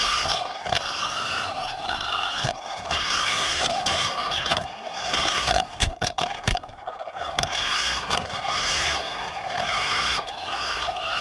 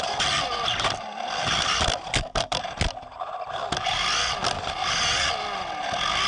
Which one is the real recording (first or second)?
second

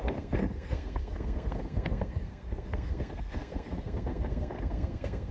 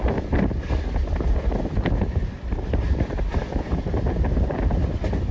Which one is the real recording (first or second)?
second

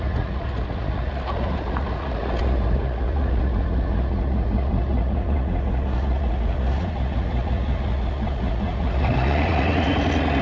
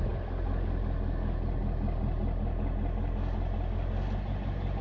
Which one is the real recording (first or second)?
second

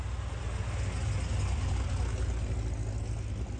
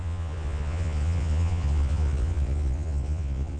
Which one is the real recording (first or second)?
first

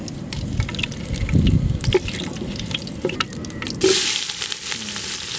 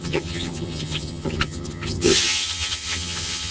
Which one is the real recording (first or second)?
first